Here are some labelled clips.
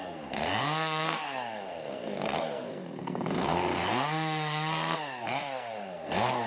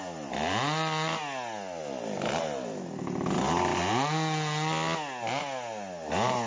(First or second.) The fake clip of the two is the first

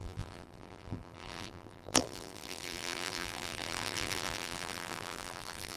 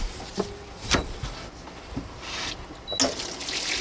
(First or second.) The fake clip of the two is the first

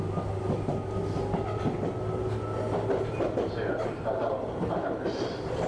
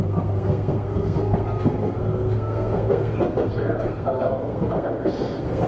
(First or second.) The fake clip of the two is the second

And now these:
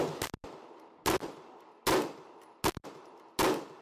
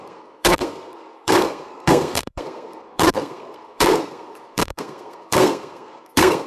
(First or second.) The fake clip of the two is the second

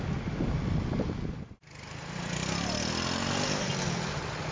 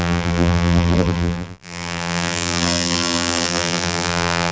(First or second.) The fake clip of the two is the second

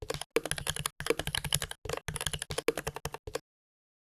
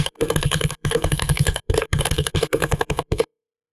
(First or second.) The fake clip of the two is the second